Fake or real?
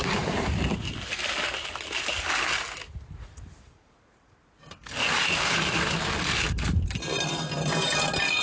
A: real